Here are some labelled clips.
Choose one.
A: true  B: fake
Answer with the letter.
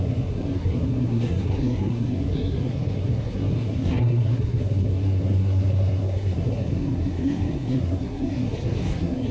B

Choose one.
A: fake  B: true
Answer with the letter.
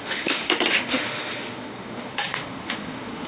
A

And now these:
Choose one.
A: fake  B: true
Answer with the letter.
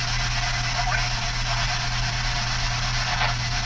B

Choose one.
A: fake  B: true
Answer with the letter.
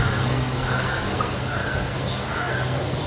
A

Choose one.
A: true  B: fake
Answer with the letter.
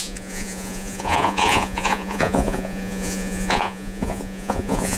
B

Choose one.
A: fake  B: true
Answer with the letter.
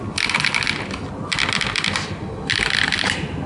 B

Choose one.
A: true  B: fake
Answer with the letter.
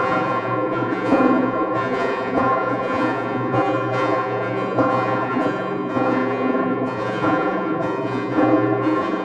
B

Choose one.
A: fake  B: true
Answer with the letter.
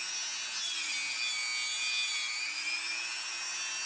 B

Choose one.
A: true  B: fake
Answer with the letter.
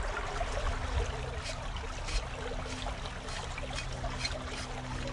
A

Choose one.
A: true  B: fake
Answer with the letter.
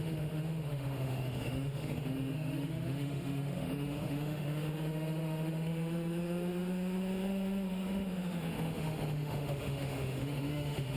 B